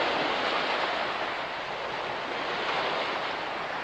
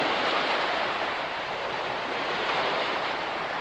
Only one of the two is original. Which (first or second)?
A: first